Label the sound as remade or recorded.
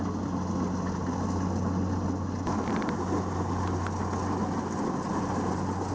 recorded